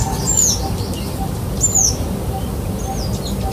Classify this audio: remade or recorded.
recorded